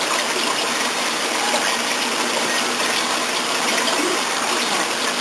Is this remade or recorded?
recorded